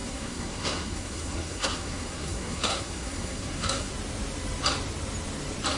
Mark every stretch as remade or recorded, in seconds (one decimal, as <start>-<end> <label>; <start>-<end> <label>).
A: 0.0-3.9 remade; 3.9-5.8 recorded